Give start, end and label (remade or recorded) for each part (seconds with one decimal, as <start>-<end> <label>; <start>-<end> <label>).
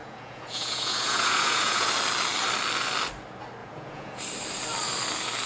0.0-1.9 remade; 1.9-3.6 recorded; 3.6-4.2 remade; 4.2-5.5 recorded